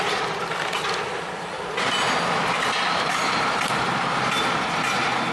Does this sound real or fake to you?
real